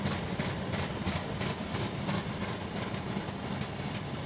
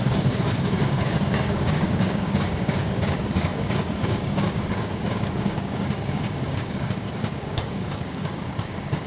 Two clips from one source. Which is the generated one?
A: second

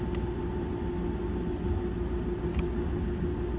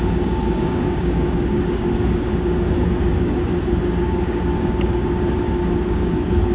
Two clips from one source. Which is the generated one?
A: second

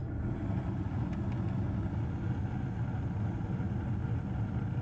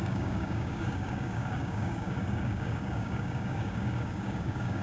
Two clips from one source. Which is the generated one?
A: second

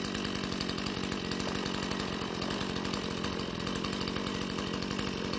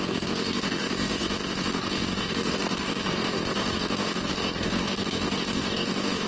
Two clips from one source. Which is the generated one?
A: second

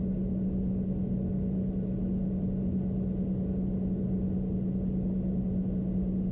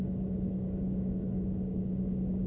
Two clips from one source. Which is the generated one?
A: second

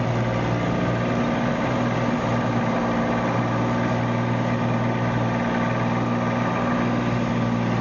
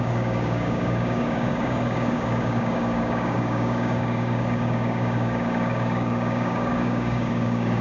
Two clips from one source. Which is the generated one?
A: second